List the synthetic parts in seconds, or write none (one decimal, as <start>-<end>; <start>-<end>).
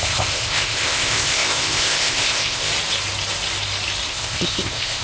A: 0.0-2.7; 4.1-5.0